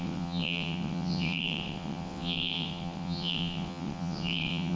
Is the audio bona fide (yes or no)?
no